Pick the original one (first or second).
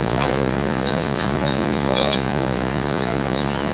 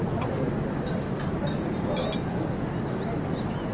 second